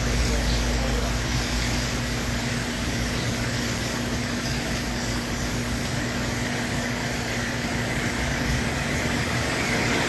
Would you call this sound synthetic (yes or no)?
yes